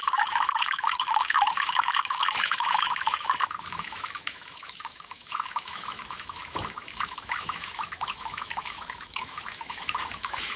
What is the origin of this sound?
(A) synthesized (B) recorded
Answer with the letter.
A